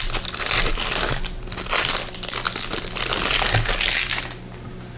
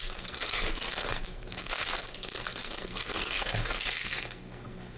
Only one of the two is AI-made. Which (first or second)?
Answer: second